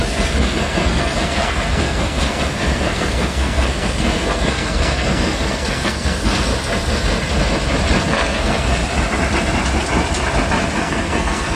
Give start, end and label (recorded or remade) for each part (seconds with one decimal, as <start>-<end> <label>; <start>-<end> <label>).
0.0-6.5 remade; 6.5-8.0 recorded; 8.0-8.8 remade; 8.8-10.8 recorded; 10.8-11.5 remade